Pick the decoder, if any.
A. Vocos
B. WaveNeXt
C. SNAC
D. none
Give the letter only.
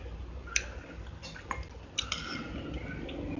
D